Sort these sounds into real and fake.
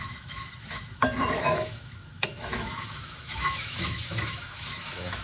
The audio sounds fake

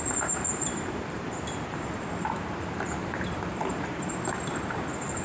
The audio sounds fake